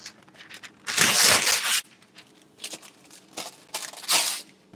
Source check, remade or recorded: recorded